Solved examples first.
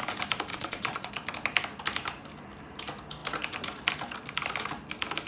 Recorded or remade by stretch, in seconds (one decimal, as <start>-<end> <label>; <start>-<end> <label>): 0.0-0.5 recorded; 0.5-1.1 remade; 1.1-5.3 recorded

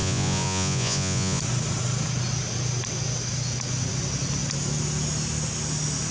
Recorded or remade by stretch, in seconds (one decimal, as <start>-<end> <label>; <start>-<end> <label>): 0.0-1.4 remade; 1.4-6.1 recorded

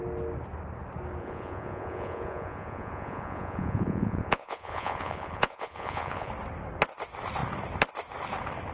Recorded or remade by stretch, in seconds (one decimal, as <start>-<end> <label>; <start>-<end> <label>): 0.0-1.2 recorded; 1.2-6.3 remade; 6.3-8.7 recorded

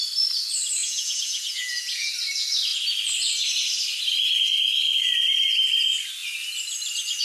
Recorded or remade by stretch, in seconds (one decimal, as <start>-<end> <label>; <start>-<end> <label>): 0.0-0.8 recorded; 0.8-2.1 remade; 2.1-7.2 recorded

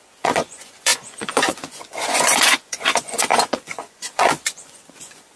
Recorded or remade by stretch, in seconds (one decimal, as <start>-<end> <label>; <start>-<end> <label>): 0.0-5.4 remade

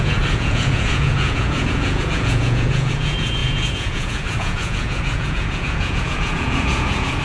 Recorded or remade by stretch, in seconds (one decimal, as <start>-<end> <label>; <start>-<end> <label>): 0.0-7.2 remade